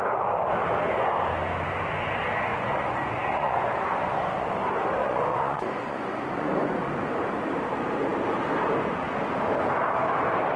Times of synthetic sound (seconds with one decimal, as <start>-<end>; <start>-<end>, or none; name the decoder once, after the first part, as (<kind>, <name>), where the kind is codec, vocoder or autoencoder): 2.5-4.5 (vocoder, Vocos); 5.0-6.8